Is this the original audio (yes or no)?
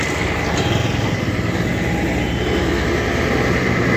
yes